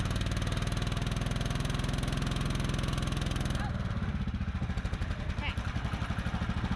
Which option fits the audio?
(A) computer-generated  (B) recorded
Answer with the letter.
B